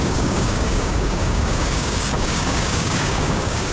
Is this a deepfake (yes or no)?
yes